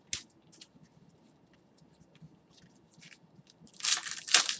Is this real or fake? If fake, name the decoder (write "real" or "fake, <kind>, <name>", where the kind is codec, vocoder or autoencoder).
real